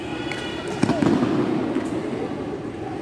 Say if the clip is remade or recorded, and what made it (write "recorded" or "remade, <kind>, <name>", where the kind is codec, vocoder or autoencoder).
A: recorded